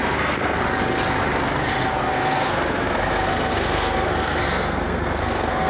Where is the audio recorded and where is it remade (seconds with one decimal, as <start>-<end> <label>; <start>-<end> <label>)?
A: 0.0-0.6 remade; 0.6-2.0 recorded; 2.0-5.7 remade